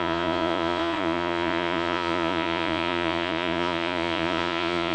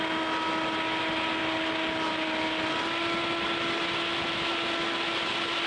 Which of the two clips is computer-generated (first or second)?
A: first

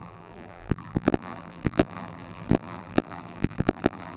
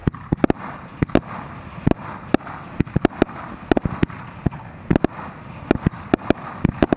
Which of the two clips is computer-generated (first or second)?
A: first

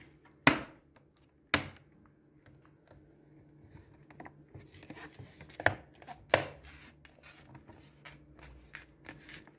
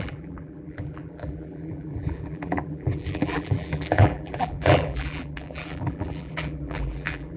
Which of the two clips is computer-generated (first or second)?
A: second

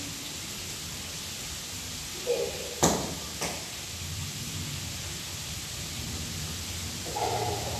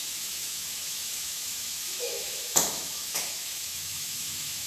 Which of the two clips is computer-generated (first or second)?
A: second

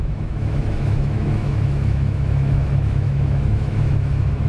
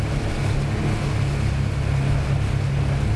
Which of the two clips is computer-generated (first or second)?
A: first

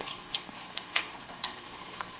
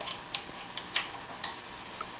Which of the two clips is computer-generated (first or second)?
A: first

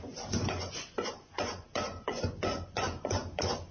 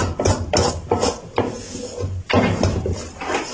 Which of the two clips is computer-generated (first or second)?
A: first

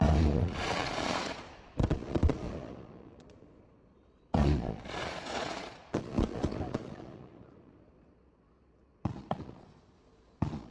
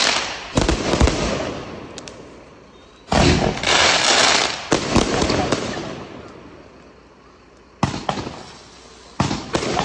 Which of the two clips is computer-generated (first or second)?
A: first